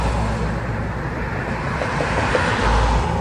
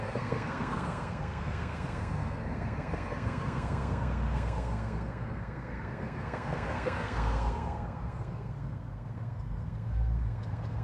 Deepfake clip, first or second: second